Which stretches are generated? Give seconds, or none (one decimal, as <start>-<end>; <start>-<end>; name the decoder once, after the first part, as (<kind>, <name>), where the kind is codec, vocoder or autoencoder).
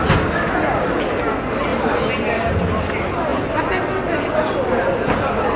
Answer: none